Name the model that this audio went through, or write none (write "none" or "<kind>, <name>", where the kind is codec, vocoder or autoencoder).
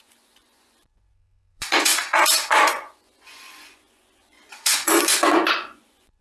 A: vocoder, Vocos